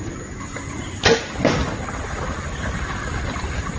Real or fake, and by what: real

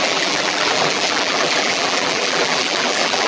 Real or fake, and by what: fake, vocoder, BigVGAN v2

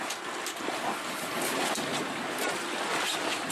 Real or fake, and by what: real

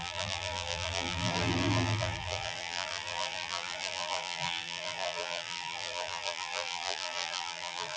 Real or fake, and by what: fake, vocoder, BigVGAN v2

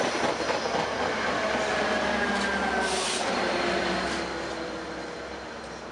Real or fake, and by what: real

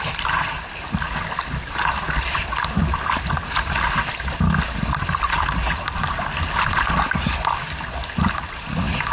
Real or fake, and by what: real